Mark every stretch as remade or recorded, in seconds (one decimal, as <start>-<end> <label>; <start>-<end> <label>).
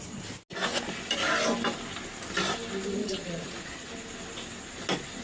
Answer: 0.0-3.0 recorded; 3.0-3.9 remade; 3.9-5.2 recorded